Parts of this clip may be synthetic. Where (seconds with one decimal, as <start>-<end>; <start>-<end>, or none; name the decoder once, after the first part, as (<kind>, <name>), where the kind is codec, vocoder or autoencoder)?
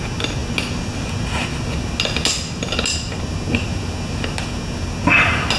none